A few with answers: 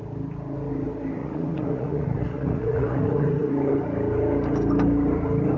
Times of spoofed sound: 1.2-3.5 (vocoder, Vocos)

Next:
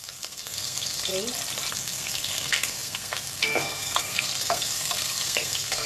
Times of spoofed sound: 0.0-1.1 (codec, SNAC); 1.7-5.9

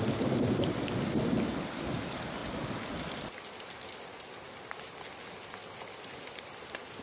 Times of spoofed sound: none